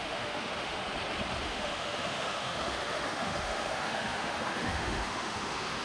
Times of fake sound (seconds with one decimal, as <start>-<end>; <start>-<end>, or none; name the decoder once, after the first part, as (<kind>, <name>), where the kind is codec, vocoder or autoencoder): 0.0-0.8 (autoencoder, DAC-VAE); 1.4-5.8